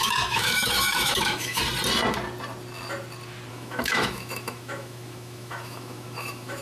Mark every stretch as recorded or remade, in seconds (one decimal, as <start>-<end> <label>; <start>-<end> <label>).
0.0-1.6 remade; 1.6-3.5 recorded; 3.5-6.6 remade